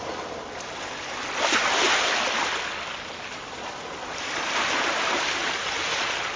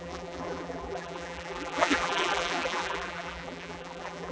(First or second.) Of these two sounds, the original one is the first